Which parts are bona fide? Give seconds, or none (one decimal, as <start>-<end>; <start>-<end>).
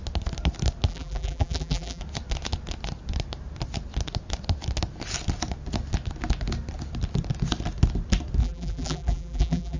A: 0.0-0.9; 2.0-8.4